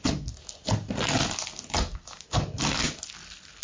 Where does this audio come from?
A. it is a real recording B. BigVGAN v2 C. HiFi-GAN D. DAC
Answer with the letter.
A